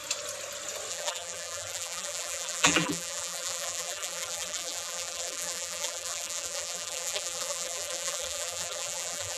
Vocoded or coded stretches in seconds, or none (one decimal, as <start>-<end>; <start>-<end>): 0.9-9.4